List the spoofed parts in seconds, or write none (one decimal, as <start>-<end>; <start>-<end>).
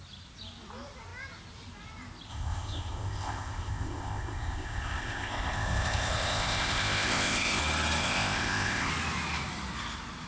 2.3-7.6; 8.0-8.9